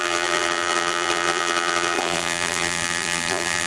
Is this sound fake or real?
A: fake